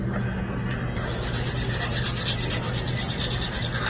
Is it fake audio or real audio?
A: real